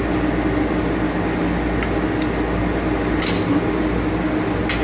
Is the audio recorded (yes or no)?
yes